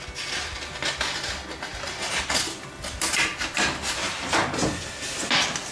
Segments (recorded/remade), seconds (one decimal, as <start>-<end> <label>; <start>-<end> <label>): 0.0-5.7 recorded